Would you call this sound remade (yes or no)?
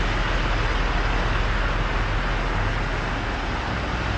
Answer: no